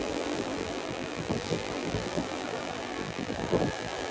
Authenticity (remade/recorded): remade